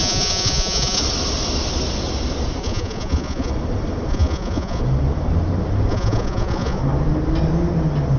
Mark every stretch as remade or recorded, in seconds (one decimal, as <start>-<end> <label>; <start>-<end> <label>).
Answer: 0.0-1.0 remade; 1.0-2.6 recorded; 2.6-3.5 remade; 3.5-4.1 recorded; 4.1-4.8 remade; 4.8-5.9 recorded; 5.9-6.8 remade; 6.8-8.2 recorded